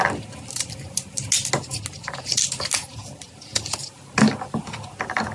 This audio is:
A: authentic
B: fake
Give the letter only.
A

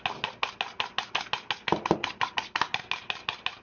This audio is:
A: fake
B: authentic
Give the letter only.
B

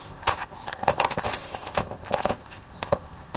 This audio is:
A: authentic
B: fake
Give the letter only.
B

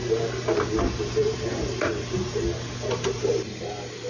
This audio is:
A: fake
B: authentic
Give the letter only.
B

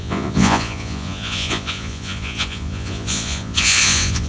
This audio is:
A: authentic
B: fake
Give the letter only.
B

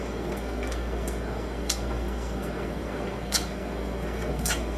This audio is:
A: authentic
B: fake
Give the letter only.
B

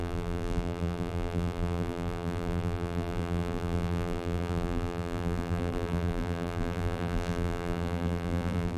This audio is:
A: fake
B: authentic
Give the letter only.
A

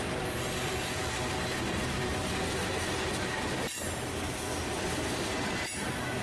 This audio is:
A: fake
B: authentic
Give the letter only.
B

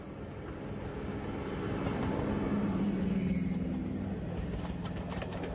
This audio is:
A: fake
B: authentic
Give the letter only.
B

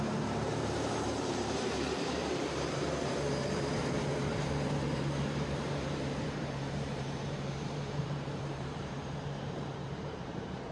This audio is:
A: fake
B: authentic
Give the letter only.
A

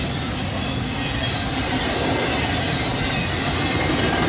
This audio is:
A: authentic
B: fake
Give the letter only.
A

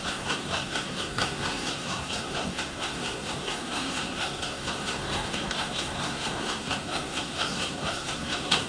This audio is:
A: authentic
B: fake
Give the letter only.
B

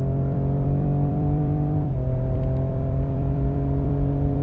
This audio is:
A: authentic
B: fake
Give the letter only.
B